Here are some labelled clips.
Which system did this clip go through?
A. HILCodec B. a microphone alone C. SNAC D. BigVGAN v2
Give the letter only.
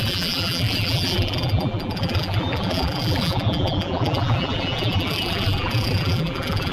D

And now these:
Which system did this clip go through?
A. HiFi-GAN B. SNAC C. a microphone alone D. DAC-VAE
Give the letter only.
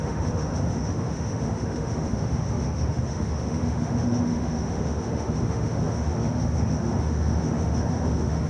D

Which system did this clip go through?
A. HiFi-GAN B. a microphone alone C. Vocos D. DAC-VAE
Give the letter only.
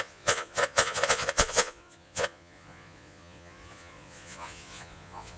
C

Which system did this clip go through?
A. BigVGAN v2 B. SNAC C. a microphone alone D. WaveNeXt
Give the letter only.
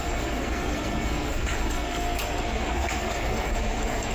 B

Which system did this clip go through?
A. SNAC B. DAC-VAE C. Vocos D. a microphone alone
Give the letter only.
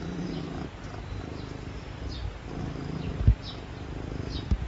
D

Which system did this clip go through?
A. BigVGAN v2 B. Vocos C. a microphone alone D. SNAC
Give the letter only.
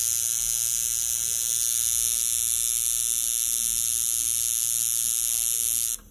C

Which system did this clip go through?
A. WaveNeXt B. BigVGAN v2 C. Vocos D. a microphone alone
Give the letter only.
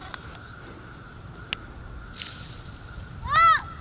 D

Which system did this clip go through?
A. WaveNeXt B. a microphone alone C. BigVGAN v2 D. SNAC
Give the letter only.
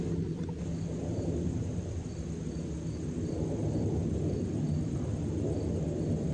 B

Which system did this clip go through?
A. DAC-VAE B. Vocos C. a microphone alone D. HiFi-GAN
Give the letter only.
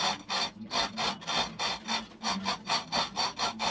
C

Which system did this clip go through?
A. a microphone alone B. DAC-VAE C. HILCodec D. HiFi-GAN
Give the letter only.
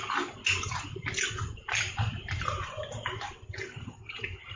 A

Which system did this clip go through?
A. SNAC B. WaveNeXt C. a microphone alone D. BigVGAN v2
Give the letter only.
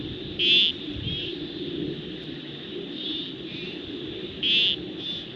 C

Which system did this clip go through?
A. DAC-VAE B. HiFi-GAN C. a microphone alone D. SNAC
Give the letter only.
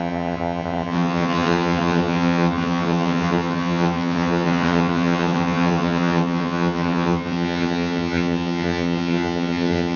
B